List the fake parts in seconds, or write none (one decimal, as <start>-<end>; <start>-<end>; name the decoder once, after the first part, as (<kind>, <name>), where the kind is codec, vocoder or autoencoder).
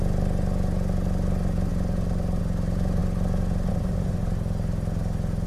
1.7-2.4 (vocoder, BigVGAN v2)